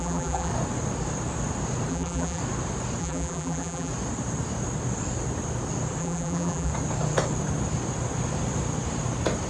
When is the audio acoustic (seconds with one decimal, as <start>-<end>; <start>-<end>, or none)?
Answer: 0.5-1.9; 2.4-3.0; 3.9-6.0; 6.7-9.5